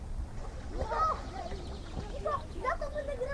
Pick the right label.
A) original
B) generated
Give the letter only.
A